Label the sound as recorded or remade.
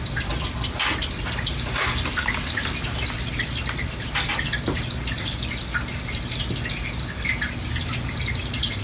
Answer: recorded